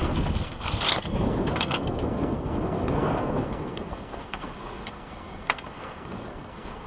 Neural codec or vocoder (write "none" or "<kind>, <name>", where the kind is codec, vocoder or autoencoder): codec, SNAC